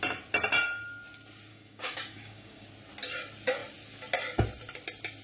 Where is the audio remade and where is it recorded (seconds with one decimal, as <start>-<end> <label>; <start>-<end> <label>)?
0.0-1.5 recorded; 1.5-2.7 remade; 2.7-5.2 recorded